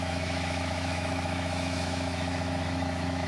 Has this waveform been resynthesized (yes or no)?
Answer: yes